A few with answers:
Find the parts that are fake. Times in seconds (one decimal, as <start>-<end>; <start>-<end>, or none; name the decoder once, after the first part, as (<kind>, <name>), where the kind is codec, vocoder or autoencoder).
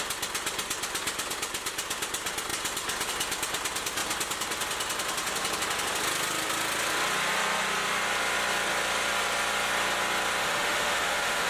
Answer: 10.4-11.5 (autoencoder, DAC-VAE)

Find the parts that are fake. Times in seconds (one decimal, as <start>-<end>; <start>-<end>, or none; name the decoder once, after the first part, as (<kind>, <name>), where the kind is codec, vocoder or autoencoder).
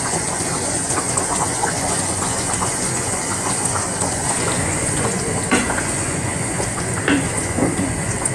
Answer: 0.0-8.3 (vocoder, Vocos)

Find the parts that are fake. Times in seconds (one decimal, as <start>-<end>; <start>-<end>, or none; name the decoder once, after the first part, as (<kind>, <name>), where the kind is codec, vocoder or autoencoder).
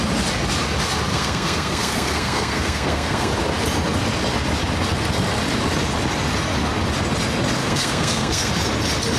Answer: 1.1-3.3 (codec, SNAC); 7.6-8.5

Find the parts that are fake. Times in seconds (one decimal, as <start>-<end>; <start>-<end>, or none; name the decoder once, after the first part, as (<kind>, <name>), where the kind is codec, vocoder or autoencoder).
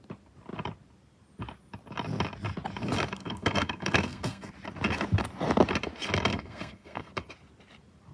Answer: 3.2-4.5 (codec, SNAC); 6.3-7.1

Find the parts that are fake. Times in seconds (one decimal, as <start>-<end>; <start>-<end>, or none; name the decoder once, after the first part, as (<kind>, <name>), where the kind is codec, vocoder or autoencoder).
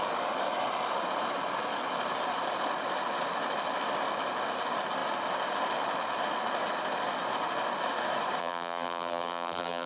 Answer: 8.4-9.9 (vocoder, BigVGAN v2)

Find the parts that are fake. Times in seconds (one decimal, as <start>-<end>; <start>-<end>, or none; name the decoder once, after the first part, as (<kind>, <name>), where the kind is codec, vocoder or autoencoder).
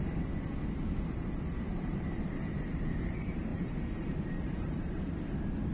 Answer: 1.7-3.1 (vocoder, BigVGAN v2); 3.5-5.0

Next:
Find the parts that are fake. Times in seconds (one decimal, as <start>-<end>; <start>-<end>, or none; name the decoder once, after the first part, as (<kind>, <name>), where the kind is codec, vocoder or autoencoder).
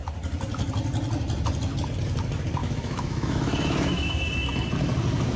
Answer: 2.6-4.1 (autoencoder, DAC-VAE)